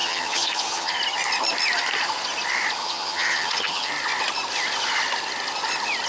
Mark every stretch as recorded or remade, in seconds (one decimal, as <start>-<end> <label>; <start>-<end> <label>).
0.0-1.0 remade; 1.0-2.8 recorded; 2.8-3.9 remade; 3.9-6.1 recorded